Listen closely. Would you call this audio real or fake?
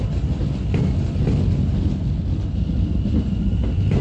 real